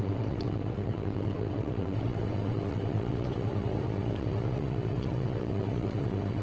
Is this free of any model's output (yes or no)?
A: no